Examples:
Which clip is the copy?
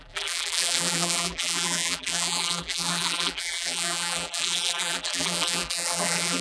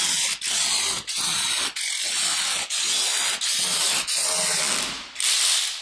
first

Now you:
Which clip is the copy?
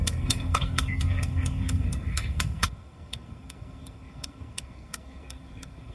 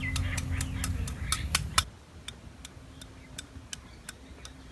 first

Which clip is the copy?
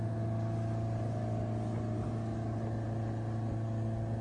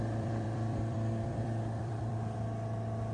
second